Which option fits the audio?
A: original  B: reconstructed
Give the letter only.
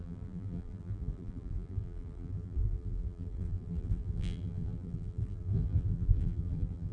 B